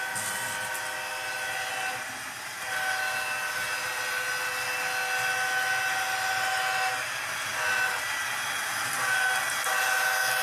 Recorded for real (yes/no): yes